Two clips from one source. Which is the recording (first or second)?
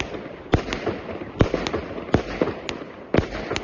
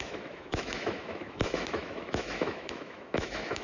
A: first